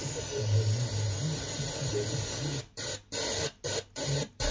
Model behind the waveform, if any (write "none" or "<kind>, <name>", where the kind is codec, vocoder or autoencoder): none